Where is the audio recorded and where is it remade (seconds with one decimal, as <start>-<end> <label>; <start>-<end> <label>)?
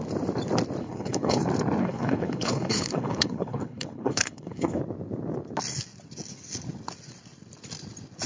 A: 0.0-0.8 recorded; 0.8-1.4 remade; 1.4-1.8 recorded; 1.8-4.8 remade; 4.8-8.3 recorded